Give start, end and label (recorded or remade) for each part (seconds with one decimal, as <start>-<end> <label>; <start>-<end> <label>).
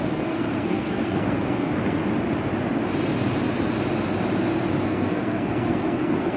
0.0-2.0 remade; 2.0-4.7 recorded; 4.7-6.4 remade